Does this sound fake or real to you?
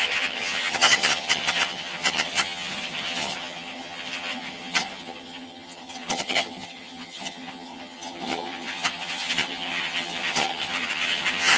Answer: fake